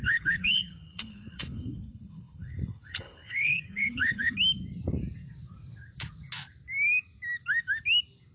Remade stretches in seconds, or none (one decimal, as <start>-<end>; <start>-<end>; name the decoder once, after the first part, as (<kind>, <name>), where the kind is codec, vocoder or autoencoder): 0.0-4.3 (codec, HILCodec)